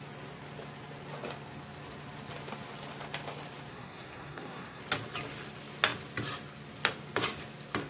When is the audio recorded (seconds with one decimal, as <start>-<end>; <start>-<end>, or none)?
0.0-3.7; 4.8-7.9